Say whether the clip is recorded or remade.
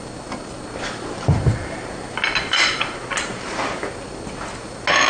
recorded